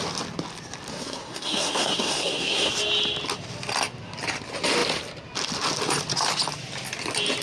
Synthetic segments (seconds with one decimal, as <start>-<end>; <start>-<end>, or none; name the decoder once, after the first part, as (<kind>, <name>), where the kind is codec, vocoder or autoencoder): 0.9-2.7 (codec, SNAC)